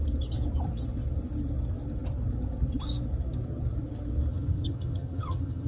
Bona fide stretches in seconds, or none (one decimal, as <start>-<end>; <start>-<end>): 0.0-4.3